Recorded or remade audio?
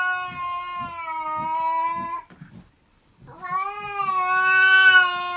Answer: recorded